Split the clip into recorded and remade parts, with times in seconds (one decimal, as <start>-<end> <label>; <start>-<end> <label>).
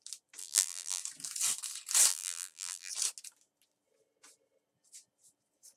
0.0-0.4 recorded; 0.4-1.0 remade; 1.0-2.1 recorded; 2.1-2.9 remade; 2.9-5.8 recorded